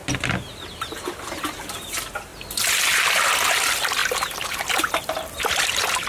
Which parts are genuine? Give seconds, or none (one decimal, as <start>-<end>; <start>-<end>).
0.0-6.1